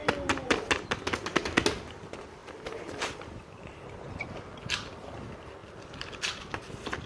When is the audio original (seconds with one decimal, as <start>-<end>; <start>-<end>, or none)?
0.6-2.4; 5.1-5.6